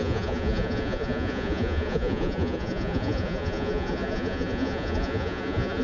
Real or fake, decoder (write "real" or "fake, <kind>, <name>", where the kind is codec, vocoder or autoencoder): fake, vocoder, Vocos